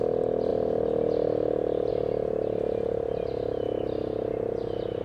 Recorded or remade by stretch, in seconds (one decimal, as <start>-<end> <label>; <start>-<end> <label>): 0.0-5.0 recorded